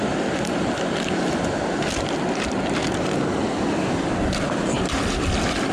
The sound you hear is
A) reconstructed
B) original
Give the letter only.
B